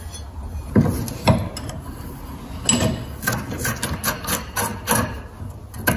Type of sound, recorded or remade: recorded